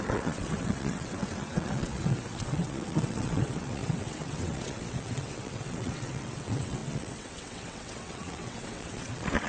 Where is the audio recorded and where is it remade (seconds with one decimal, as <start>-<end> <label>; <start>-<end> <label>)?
0.0-9.5 remade